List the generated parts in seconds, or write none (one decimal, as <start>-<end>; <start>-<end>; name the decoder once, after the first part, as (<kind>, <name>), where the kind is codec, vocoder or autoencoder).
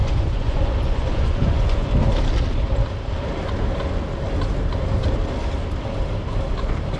0.0-1.9 (vocoder, Vocos)